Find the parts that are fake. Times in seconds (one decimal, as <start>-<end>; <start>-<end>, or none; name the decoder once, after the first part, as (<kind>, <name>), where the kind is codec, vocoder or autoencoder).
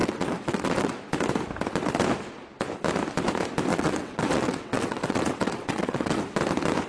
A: 0.0-1.0 (vocoder, WaveNeXt); 3.7-6.2